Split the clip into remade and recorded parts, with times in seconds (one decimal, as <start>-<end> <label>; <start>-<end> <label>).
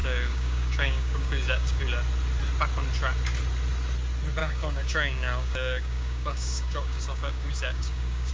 0.0-1.8 remade; 1.8-4.4 recorded; 4.4-8.3 remade